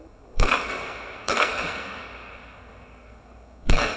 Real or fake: fake